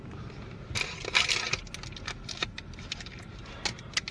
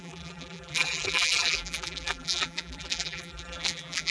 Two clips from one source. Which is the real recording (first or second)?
first